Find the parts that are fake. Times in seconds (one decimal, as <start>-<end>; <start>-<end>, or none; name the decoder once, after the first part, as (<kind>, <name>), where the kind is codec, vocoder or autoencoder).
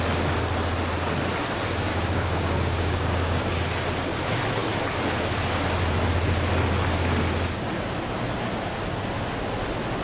1.9-3.5 (codec, DAC)